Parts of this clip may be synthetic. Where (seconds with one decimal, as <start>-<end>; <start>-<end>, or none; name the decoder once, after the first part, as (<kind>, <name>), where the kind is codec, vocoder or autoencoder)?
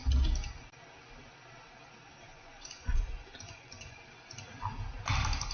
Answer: 2.3-4.0 (vocoder, Vocos)